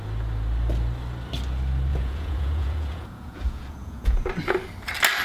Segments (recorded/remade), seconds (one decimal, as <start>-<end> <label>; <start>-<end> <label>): 0.0-1.9 recorded; 1.9-4.3 remade; 4.3-5.2 recorded